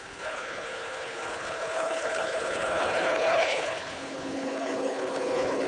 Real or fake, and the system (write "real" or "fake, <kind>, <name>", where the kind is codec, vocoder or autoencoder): fake, codec, HILCodec